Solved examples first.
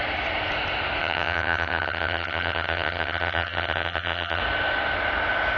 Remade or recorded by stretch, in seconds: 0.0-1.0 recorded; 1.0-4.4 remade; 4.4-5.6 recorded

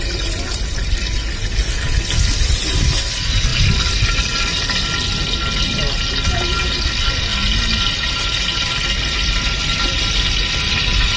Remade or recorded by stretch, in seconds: 0.0-11.2 recorded

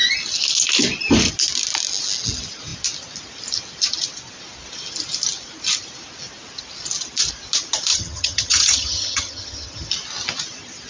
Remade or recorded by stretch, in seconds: 0.0-7.9 recorded; 7.9-9.9 remade; 9.9-10.9 recorded

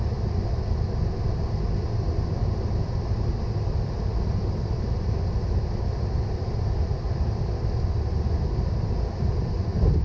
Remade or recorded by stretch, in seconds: 0.0-10.0 recorded

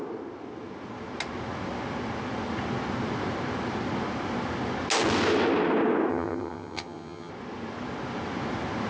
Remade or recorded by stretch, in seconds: 0.0-6.1 recorded; 6.1-7.3 remade; 7.3-8.9 recorded

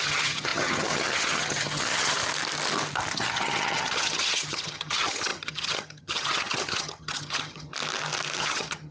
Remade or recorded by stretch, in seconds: 0.0-2.2 remade; 2.2-3.1 recorded; 3.1-7.7 remade; 7.7-8.4 recorded; 8.4-8.9 remade

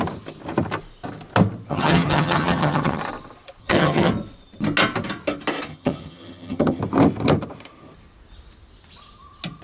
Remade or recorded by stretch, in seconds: 0.0-1.7 recorded; 1.7-3.0 remade; 3.0-3.6 recorded; 3.6-4.1 remade; 4.1-5.7 recorded; 5.7-6.8 remade; 6.8-9.6 recorded

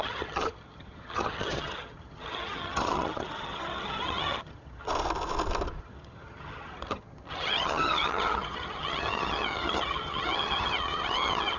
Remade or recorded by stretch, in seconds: 0.0-4.9 remade; 4.9-5.8 recorded; 5.8-11.6 remade